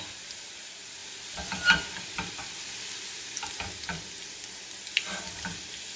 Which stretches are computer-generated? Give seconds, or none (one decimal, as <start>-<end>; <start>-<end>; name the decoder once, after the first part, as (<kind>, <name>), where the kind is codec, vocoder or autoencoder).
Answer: 1.0-4.3 (vocoder, BigVGAN v2)